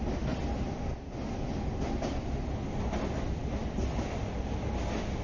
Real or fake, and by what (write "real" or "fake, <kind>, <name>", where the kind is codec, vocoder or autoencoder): real